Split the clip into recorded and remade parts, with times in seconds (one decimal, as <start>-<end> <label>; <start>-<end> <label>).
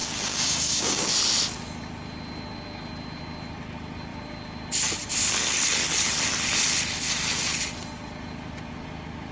0.0-1.1 remade; 1.1-9.3 recorded